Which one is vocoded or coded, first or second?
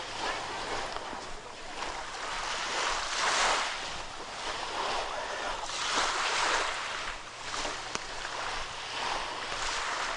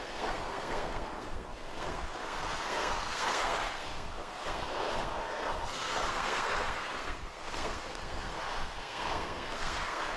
second